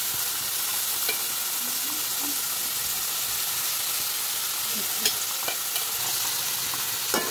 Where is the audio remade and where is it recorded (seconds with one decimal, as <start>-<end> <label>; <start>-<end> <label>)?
0.0-7.3 recorded